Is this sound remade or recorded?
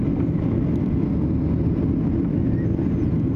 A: recorded